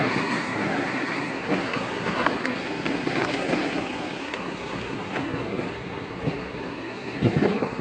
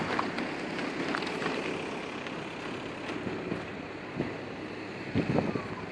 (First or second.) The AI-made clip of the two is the first